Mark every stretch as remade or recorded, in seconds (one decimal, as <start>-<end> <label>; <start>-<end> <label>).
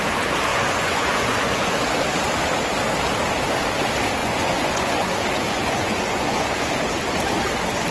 0.0-0.5 recorded; 0.5-1.7 remade; 1.7-4.2 recorded; 4.2-5.1 remade; 5.1-5.5 recorded; 5.5-6.8 remade; 6.8-7.9 recorded